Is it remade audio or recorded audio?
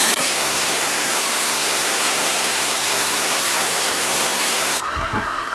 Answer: remade